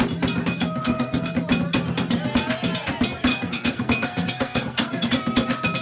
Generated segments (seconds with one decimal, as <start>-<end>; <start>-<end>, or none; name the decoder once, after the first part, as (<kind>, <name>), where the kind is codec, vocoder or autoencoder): 0.8-1.3 (codec, SNAC); 3.3-5.1

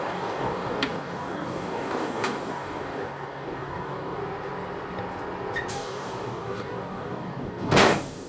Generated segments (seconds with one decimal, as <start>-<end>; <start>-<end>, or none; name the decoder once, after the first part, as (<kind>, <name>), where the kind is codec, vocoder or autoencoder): 0.0-4.2 (codec, DAC); 5.7-8.3

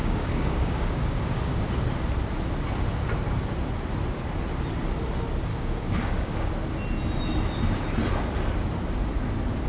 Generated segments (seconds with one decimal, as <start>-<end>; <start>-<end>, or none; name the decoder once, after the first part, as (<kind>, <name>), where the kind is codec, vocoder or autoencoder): 0.0-1.6 (codec, DAC); 5.5-6.5

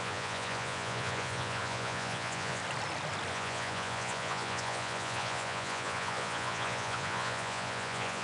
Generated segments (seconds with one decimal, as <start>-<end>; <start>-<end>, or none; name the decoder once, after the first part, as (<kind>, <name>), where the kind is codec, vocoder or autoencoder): 0.0-2.6 (vocoder, Vocos); 3.3-8.2